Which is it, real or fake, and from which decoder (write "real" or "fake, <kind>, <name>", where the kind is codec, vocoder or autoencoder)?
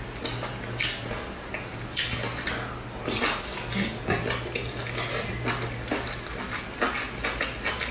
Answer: real